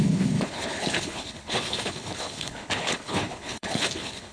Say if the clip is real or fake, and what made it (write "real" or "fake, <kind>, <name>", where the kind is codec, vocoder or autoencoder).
fake, codec, HILCodec